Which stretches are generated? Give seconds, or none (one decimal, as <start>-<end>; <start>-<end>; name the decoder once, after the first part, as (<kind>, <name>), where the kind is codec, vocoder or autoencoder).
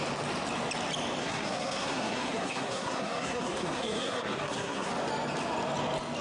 1.2-4.9 (codec, SNAC)